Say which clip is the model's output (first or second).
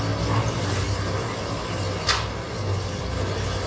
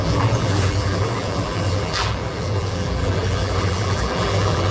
second